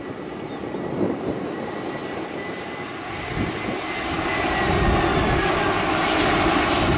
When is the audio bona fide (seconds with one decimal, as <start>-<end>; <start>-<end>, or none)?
0.0-7.0